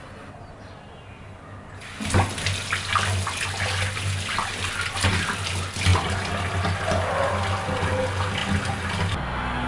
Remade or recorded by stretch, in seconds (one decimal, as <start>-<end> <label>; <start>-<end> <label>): 0.0-9.7 recorded